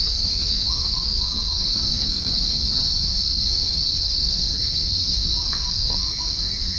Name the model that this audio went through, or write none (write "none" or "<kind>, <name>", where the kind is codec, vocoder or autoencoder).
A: codec, SNAC